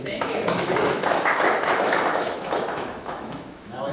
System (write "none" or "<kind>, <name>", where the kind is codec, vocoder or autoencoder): autoencoder, DAC-VAE